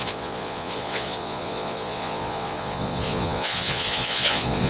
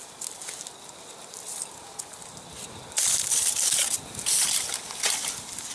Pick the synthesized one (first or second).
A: first